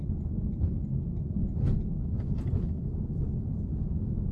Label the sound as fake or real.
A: real